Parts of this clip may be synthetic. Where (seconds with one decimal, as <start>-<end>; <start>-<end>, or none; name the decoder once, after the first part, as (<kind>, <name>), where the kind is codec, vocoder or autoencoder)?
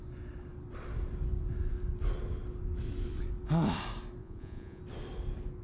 4.2-4.8 (vocoder, Vocos)